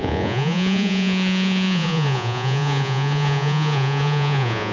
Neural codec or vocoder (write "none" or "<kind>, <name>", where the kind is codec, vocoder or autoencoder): vocoder, Vocos